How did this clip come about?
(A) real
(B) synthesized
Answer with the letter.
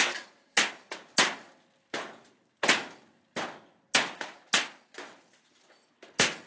A